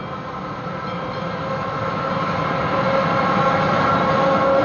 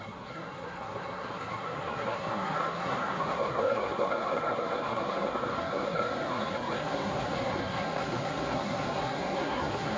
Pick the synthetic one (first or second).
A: second